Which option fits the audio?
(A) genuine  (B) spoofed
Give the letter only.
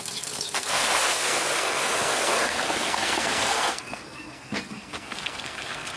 B